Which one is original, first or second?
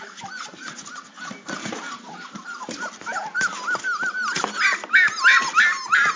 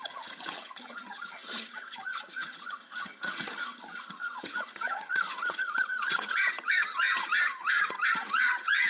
first